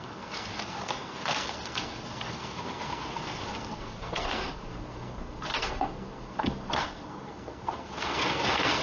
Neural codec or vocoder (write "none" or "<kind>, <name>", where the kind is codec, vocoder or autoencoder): codec, SNAC